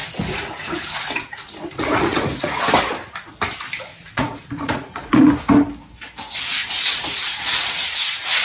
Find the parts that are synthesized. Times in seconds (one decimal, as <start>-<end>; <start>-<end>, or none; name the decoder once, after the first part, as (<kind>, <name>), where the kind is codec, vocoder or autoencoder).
0.0-2.6 (vocoder, Vocos); 3.9-5.3; 6.6-8.4